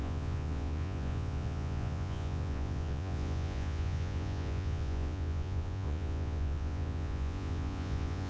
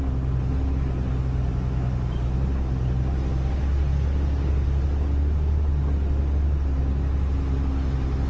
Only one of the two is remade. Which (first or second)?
first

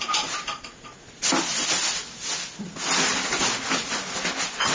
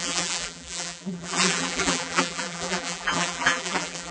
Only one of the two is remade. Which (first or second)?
second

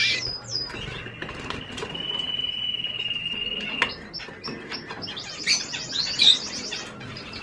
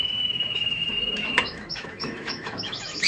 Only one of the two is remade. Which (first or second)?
second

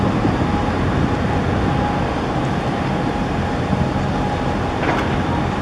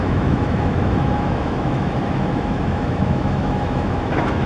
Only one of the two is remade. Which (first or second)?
second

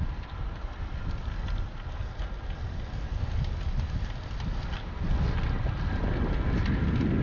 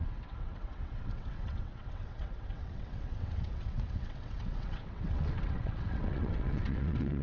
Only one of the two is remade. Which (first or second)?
second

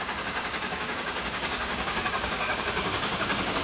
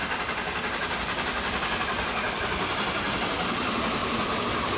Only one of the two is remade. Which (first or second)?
first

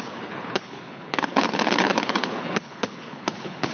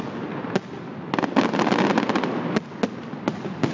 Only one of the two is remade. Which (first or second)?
first